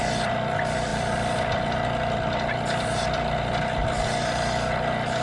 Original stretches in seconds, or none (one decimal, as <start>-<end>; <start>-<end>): 0.0-0.9; 3.6-5.2